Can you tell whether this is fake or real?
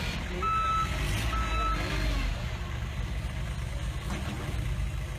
real